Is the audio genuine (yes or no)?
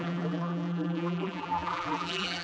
no